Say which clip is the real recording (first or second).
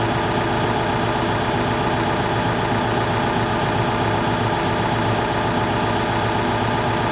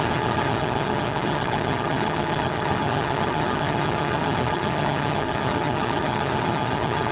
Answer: first